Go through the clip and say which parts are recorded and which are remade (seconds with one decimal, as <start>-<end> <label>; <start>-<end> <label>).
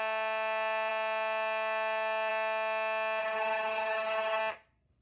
0.0-3.2 recorded; 3.2-4.4 remade; 4.4-5.0 recorded